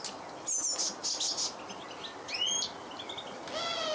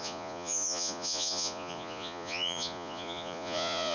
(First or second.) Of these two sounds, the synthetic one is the second